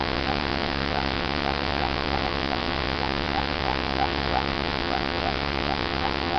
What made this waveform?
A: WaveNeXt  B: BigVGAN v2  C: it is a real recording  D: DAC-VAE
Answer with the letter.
A